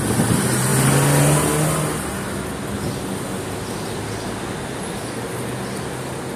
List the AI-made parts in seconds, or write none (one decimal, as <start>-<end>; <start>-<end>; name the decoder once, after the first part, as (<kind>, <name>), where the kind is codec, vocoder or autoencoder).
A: none